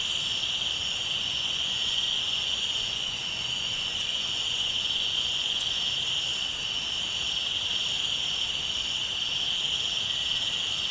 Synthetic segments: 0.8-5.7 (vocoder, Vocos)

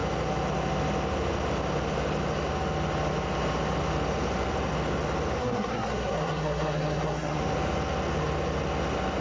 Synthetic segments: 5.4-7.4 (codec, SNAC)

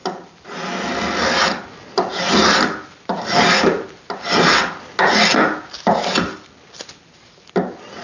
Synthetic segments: none

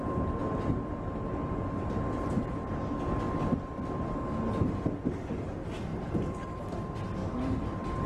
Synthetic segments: 5.9-6.6 (vocoder, BigVGAN v2)

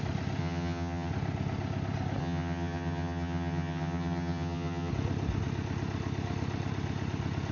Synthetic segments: 0.4-1.1 (vocoder, HiFi-GAN); 2.2-4.9

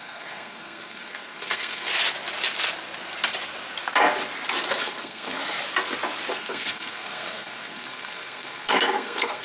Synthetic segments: 0.0-1.9 (codec, SNAC); 4.8-5.4; 6.3-9.4

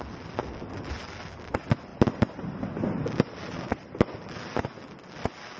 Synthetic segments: none